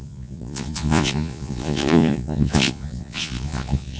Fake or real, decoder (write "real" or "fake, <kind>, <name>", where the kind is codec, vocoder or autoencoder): fake, vocoder, Vocos